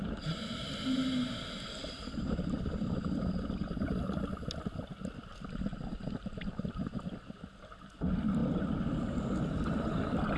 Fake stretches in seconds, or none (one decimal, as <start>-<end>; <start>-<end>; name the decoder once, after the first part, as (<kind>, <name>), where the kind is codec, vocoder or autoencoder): 1.8-3.8 (vocoder, BigVGAN v2)